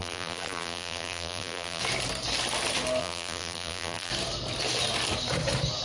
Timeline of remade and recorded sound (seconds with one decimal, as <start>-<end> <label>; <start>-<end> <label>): 0.0-1.8 remade; 1.8-3.0 recorded; 3.0-4.1 remade; 4.1-5.8 recorded